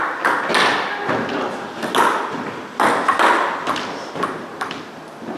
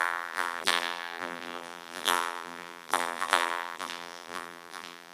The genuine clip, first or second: first